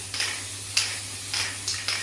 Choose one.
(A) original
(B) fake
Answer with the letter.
A